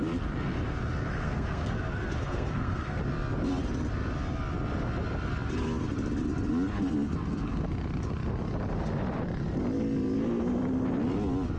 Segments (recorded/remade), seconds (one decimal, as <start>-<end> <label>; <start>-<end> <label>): 0.0-1.1 recorded; 1.1-1.8 remade; 1.8-2.2 recorded; 2.2-3.0 remade; 3.0-11.6 recorded